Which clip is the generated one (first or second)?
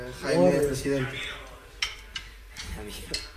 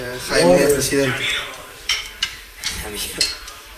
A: second